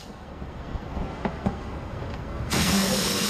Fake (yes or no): yes